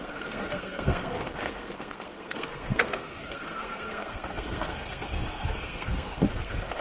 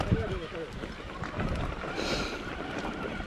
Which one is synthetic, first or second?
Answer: first